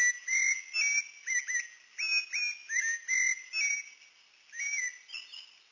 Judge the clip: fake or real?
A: real